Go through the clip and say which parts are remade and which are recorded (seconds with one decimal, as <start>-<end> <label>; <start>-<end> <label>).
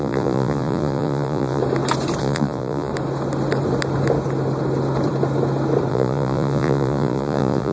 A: 0.0-1.6 remade; 1.6-2.2 recorded; 2.2-2.9 remade; 2.9-5.9 recorded; 5.9-7.7 remade